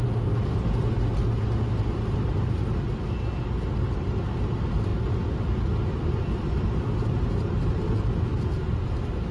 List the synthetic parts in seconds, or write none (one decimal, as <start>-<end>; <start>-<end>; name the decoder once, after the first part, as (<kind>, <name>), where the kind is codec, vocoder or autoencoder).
none